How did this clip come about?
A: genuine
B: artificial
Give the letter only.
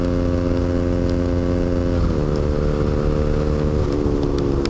A